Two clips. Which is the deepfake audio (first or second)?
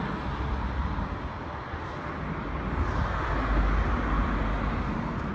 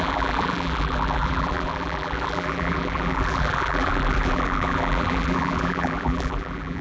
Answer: second